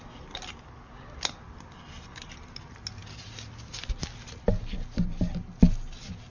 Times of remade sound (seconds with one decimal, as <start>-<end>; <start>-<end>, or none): none

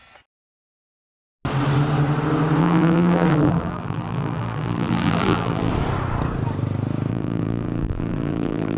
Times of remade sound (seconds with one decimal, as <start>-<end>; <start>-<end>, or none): 2.6-5.7; 7.1-8.8